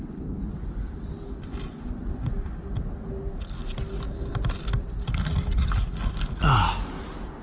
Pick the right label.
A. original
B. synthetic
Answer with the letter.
A